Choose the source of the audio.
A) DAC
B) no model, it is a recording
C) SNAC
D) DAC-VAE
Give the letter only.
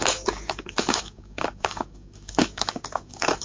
A